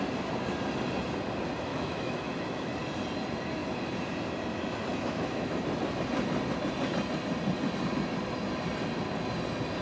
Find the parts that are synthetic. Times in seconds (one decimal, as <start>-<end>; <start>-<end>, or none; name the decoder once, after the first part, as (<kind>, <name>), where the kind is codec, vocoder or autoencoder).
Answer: 1.7-2.8 (autoencoder, DAC-VAE); 4.9-5.6